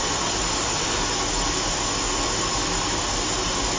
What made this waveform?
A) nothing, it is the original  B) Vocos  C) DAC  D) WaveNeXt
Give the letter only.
A